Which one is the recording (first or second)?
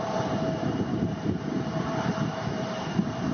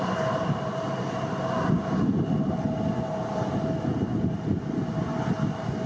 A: second